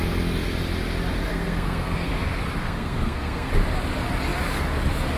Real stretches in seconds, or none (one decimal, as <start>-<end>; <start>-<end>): 0.0-1.3; 2.1-2.6; 3.5-5.2